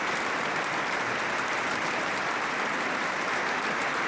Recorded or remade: recorded